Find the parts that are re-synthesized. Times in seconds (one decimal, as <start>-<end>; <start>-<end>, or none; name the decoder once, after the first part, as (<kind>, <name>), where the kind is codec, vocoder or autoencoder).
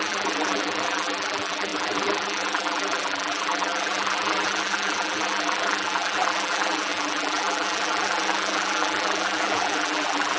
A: 0.0-10.4 (vocoder, BigVGAN v2)